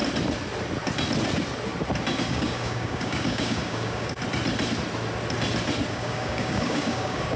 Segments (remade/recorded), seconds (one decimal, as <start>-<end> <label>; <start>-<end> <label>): 0.0-2.3 recorded; 2.3-4.2 remade; 4.2-5.9 recorded; 5.9-7.4 remade